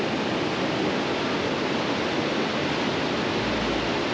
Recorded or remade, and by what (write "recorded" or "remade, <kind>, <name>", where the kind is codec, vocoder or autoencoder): recorded